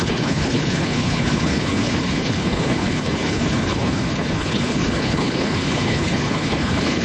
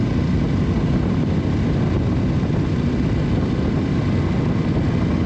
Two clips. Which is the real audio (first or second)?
second